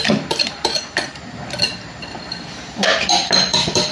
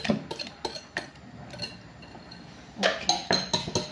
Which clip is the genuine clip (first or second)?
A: second